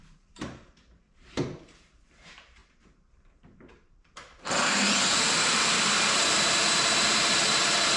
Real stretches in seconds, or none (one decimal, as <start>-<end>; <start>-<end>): none